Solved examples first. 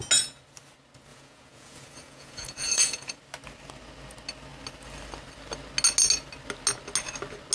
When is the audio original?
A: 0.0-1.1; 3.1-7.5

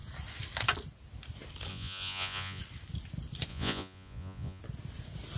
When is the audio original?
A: 0.0-1.7; 2.6-3.5; 4.6-5.4

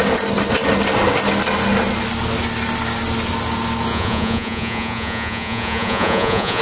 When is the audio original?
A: 0.0-3.9

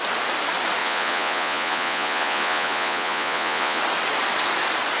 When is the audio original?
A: 0.0-0.8; 3.8-5.0

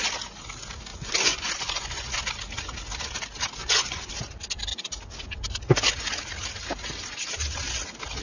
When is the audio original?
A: 0.0-0.9; 2.2-3.6; 4.1-8.2

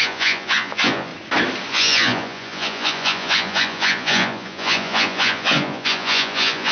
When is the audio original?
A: 1.1-1.7